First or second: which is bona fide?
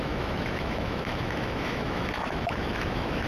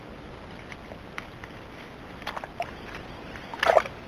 second